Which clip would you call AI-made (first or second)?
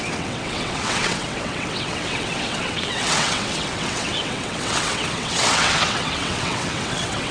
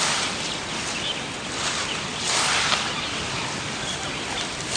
first